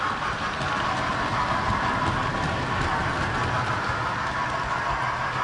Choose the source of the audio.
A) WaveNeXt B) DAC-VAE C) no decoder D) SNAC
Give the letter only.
C